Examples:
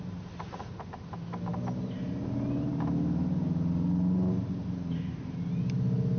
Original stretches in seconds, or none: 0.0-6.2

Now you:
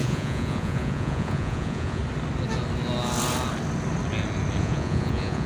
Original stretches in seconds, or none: 2.0-4.6

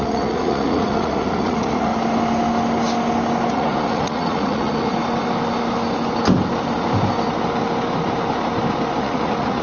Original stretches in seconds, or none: 1.9-3.5; 4.9-9.0